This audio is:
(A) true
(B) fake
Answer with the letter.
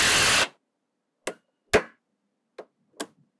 A